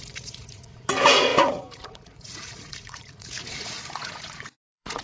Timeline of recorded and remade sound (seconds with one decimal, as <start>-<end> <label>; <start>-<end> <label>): 0.0-5.0 remade